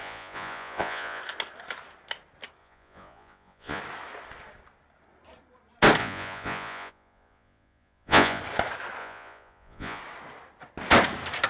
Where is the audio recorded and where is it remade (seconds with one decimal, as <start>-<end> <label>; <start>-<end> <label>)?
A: 0.0-1.2 remade; 1.2-2.6 recorded; 2.6-3.8 remade; 3.8-6.0 recorded; 6.0-8.4 remade; 8.4-9.0 recorded; 9.0-10.0 remade; 10.0-11.5 recorded